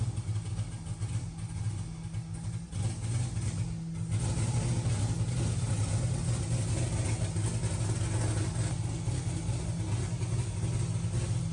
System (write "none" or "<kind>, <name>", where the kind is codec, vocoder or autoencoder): none